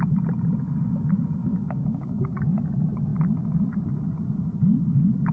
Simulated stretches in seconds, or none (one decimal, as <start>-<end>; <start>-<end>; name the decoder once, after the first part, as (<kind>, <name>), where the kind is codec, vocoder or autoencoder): 1.4-2.3 (codec, DAC)